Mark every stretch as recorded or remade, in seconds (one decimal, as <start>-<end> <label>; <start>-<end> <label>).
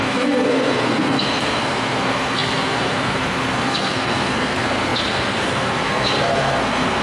0.0-7.0 remade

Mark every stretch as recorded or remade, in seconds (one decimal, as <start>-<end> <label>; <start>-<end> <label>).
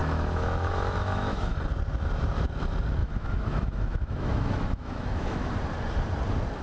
0.0-1.6 remade; 1.6-3.0 recorded; 3.0-5.5 remade; 5.5-6.6 recorded